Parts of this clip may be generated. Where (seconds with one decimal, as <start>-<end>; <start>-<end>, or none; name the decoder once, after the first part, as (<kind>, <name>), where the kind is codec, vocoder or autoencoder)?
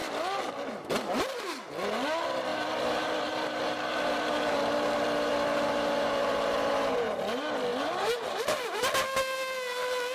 2.5-7.2 (vocoder, BigVGAN v2); 7.7-8.8